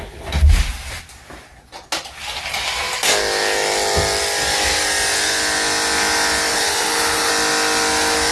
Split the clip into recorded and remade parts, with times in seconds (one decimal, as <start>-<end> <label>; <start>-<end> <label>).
0.0-6.5 recorded; 6.5-7.3 remade; 7.3-8.3 recorded